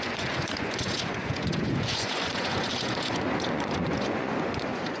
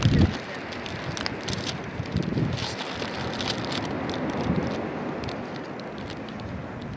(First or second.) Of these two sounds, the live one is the second